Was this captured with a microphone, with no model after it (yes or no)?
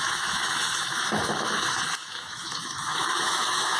no